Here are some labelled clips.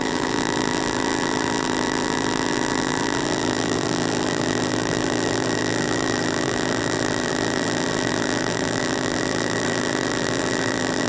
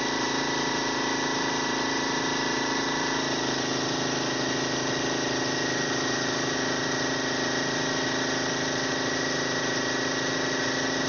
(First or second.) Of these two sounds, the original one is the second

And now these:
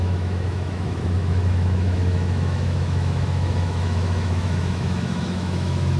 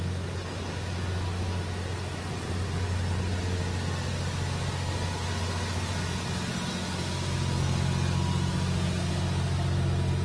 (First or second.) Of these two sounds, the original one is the second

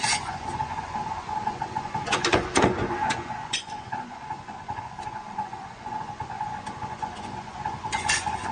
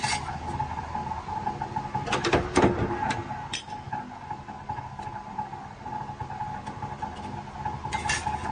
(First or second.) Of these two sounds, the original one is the second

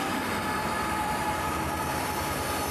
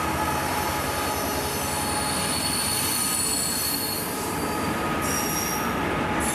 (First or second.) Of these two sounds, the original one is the second